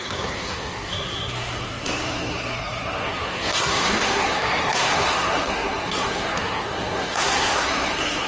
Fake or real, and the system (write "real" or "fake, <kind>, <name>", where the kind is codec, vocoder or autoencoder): fake, codec, SNAC